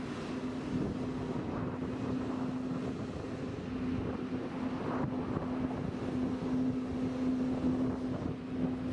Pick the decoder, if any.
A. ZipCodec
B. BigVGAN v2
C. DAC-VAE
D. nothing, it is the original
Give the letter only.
D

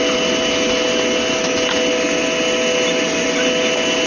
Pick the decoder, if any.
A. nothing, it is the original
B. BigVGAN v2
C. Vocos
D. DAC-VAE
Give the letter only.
A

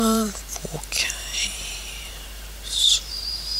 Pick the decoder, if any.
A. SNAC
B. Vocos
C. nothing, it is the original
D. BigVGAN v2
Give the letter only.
D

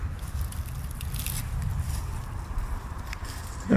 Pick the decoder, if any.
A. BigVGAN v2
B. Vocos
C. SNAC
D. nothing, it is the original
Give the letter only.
A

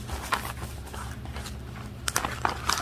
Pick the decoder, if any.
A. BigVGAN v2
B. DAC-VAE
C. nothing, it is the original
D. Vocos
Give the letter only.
C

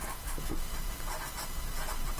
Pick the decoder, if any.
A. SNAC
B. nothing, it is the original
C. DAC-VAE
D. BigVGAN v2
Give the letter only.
D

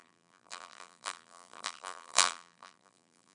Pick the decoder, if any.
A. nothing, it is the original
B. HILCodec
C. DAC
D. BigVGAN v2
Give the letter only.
D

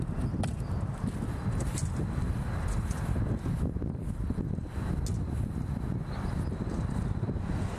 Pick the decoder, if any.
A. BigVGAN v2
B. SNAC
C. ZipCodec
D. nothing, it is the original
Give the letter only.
D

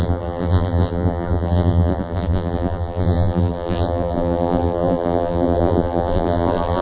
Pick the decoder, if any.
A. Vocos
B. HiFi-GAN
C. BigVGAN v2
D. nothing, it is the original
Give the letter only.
C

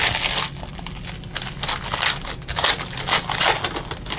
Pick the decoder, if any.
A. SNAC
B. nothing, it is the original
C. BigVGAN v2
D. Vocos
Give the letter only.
B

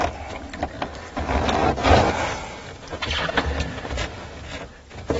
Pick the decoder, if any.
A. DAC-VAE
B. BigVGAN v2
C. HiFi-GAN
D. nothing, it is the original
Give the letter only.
D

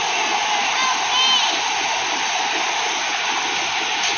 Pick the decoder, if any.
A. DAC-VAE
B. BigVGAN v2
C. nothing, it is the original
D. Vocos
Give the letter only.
C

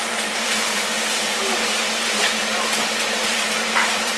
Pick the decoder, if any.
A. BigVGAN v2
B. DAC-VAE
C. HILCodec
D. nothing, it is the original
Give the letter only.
A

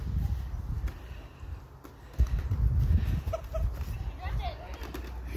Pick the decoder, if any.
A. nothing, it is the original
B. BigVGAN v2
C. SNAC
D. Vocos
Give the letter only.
A